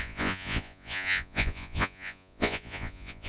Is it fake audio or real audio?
fake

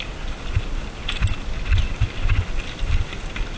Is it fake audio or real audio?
real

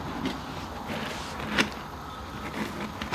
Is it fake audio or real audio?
real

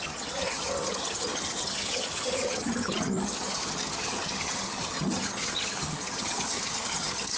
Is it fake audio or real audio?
fake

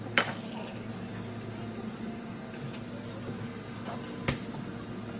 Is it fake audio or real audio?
real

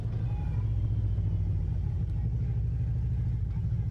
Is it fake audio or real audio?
real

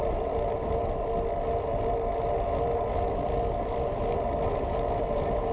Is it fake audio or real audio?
real